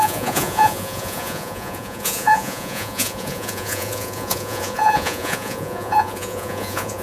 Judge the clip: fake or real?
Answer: fake